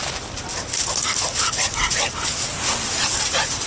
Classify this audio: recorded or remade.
recorded